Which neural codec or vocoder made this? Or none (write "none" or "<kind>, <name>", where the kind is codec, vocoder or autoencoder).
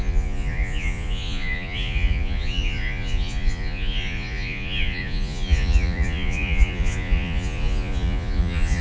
vocoder, Vocos